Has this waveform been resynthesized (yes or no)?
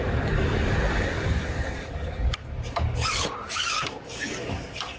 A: yes